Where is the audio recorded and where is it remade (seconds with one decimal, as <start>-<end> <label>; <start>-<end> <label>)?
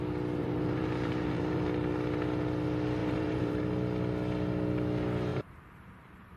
0.0-0.4 recorded; 0.4-1.6 remade; 1.6-3.0 recorded; 3.0-3.6 remade; 3.6-5.3 recorded; 5.3-6.4 remade